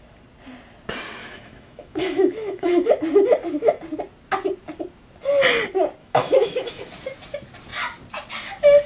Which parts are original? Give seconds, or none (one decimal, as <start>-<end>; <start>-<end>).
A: 0.0-1.2; 2.9-6.0; 6.8-8.9